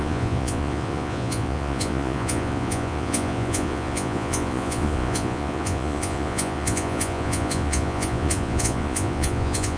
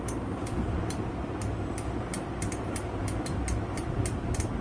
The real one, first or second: second